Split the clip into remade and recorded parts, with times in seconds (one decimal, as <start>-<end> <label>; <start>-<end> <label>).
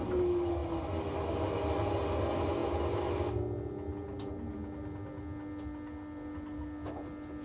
0.0-7.4 recorded